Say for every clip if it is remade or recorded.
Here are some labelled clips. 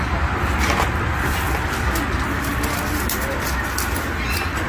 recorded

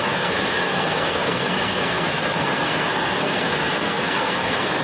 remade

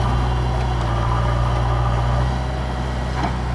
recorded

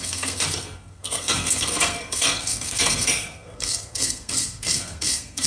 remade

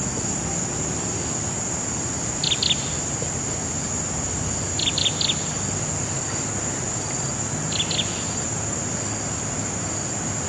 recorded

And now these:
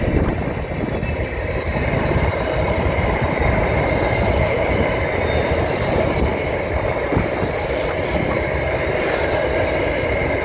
recorded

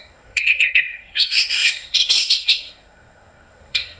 remade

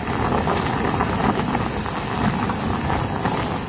recorded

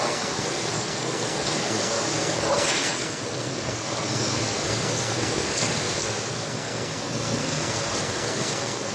remade